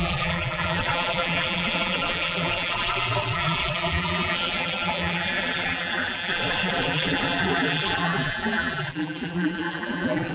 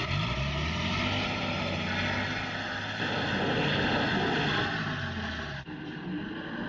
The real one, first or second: second